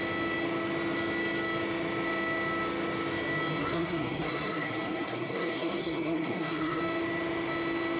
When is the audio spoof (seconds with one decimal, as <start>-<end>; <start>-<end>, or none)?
3.6-6.8